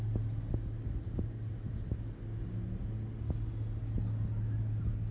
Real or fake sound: real